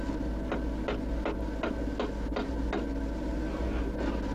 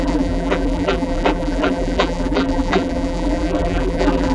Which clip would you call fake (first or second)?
second